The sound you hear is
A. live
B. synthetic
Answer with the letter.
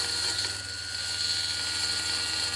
A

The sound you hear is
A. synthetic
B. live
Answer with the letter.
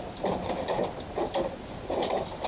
B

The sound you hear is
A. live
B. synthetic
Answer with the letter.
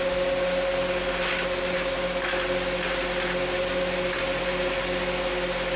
A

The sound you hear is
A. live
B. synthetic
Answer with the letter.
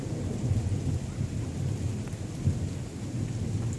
A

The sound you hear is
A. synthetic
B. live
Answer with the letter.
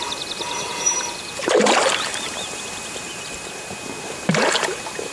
A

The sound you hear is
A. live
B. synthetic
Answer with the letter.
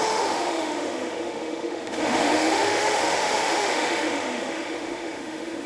B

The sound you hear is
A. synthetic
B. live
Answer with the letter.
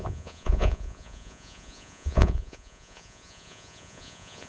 A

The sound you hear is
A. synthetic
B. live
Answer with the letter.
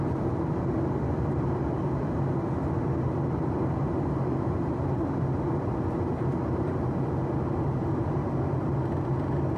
B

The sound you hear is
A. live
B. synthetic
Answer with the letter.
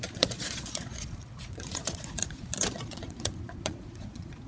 B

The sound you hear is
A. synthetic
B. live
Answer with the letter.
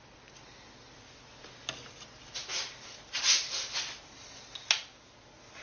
B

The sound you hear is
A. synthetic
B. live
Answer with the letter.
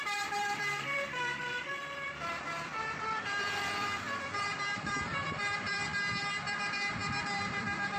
A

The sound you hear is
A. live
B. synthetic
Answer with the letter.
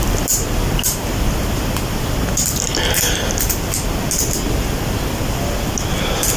A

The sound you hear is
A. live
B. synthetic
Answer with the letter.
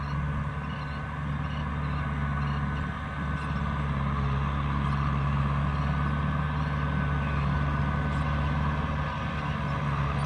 A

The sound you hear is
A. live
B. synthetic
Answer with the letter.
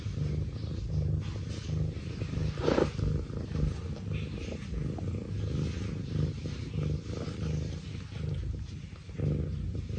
A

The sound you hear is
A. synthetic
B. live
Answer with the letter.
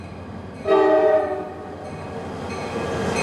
B